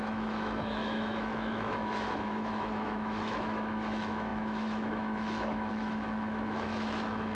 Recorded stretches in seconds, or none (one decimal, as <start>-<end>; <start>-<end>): none